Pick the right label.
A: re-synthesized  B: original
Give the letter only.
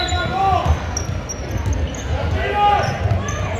B